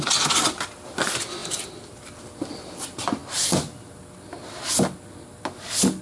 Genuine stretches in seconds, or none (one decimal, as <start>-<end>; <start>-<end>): 0.0-6.0